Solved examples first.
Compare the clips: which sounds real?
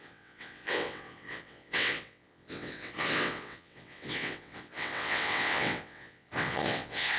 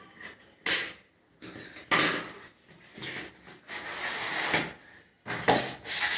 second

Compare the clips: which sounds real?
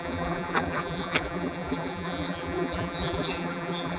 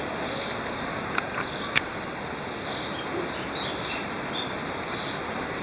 second